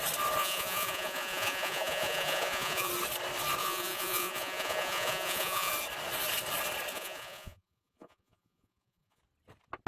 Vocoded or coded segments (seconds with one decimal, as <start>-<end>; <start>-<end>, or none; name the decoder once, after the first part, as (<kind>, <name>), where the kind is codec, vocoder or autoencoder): 0.4-2.9 (vocoder, Vocos); 3.6-5.7; 6.9-9.2